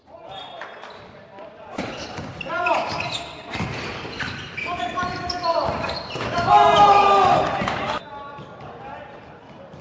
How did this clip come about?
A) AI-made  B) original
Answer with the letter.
B